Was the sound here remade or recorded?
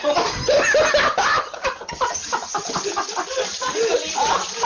recorded